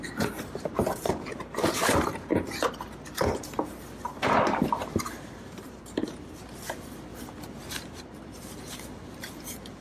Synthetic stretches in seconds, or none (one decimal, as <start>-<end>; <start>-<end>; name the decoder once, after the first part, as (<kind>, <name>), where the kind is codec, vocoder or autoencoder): 0.0-2.3 (vocoder, BigVGAN v2); 4.8-7.1; 7.7-9.8